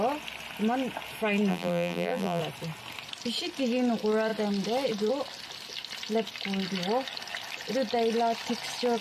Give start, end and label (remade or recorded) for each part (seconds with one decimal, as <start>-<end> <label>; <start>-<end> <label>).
0.0-1.5 recorded; 1.5-2.4 remade; 2.4-9.0 recorded